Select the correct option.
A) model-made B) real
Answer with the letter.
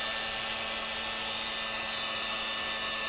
B